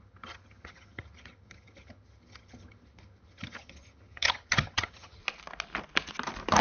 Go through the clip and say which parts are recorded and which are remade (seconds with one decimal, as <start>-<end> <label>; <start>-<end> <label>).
0.0-5.2 remade; 5.2-6.6 recorded

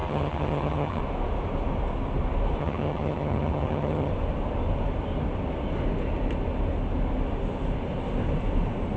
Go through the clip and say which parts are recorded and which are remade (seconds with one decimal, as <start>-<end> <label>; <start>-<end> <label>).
0.0-1.0 remade; 1.0-2.6 recorded; 2.6-4.1 remade; 4.1-9.0 recorded

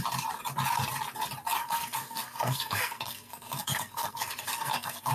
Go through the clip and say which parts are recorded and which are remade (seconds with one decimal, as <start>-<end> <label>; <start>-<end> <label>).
0.0-1.6 recorded; 1.6-5.1 remade

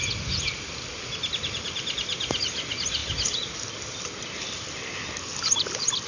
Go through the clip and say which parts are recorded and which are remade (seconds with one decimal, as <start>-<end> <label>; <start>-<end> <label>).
0.0-6.1 recorded

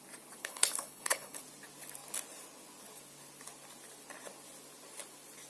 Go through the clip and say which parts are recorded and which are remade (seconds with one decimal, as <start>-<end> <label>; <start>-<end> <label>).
0.0-0.4 recorded; 0.4-1.4 remade; 1.4-5.5 recorded